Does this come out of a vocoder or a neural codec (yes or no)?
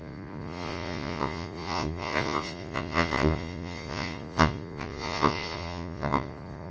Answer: yes